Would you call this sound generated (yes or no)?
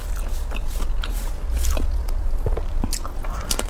no